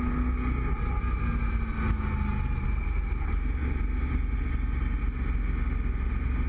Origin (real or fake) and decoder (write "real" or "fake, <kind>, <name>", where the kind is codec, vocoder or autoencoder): real